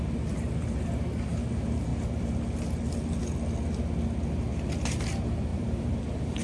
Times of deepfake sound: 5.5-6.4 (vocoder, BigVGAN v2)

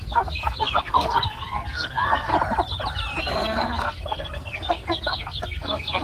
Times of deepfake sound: 0.0-2.3 (codec, SNAC); 3.2-6.0

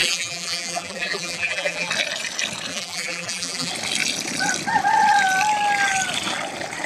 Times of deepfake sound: 0.0-1.9 (vocoder, BigVGAN v2); 2.7-3.7